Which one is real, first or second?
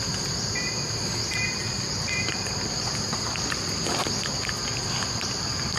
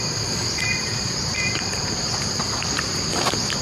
first